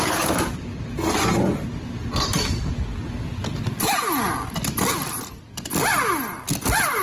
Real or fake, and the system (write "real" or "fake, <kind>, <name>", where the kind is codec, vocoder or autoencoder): real